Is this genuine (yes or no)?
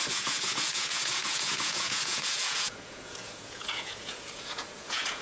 no